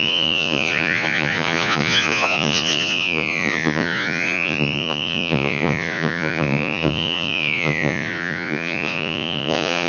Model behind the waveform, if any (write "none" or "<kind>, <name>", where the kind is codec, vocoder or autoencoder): vocoder, Vocos